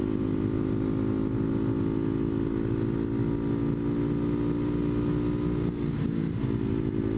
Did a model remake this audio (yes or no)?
no